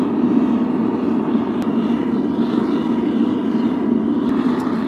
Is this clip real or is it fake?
real